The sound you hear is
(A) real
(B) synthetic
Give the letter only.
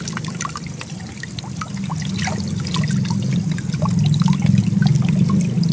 A